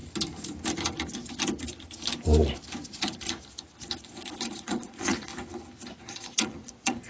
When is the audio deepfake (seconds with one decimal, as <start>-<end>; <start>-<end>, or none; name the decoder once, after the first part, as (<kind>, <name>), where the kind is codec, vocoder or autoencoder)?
4.3-5.3 (vocoder, Vocos); 6.0-7.1